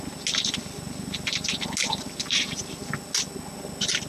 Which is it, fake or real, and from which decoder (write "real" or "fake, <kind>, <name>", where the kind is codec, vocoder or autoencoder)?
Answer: real